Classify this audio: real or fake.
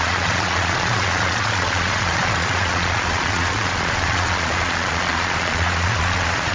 fake